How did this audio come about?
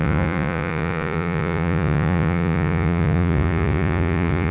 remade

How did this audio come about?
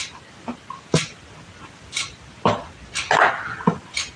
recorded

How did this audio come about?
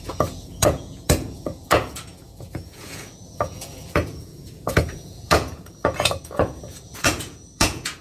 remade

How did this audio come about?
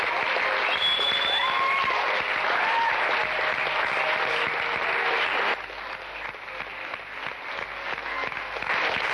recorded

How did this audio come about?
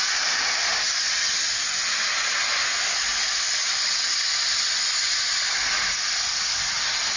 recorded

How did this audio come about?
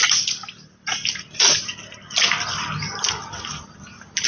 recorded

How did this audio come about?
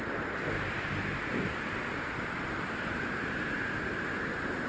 recorded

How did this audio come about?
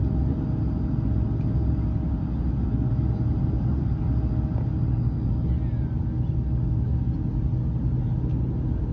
recorded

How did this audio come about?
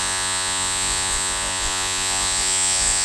remade